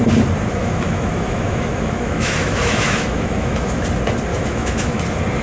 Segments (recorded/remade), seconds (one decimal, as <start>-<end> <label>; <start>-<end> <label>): 0.0-0.6 recorded; 0.6-3.8 remade; 3.8-4.3 recorded; 4.3-5.0 remade; 5.0-5.4 recorded